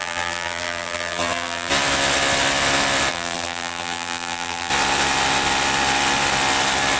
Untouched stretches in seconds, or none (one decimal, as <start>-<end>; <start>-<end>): 1.7-3.1; 4.7-7.0